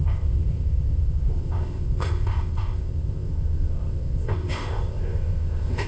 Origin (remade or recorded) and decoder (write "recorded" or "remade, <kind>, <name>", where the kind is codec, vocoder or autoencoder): remade, codec, ZipCodec